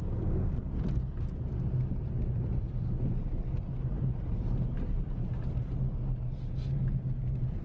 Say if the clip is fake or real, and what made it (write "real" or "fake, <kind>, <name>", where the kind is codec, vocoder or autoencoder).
real